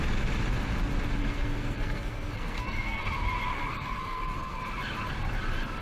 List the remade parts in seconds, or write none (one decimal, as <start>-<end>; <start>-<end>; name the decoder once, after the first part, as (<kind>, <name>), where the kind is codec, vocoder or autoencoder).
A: 1.2-3.0 (codec, SNAC); 3.5-4.6